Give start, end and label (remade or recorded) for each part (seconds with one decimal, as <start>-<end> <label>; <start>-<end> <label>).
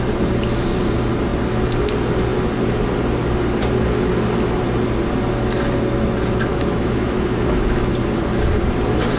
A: 0.0-6.5 recorded; 6.5-7.9 remade; 7.9-9.2 recorded